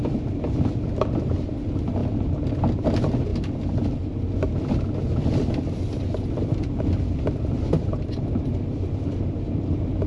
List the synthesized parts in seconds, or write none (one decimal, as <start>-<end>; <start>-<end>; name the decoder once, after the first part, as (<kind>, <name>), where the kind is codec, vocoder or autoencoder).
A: none